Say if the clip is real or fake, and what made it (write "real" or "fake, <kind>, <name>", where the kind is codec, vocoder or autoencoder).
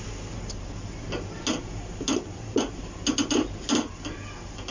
real